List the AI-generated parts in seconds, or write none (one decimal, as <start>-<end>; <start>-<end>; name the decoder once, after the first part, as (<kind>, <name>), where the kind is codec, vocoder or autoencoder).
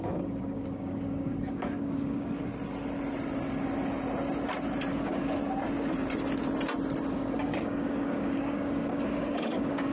0.0-2.5 (codec, DAC); 4.9-5.4; 7.1-9.9